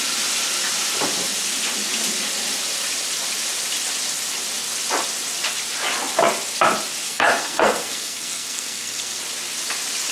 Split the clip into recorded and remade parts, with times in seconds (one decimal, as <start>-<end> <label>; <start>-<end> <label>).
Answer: 0.0-7.0 recorded; 7.0-9.2 remade; 9.2-10.1 recorded